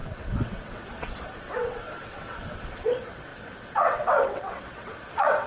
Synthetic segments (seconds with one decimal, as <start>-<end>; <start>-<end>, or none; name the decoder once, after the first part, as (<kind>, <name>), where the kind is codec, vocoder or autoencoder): 0.0-5.5 (vocoder, WaveNeXt)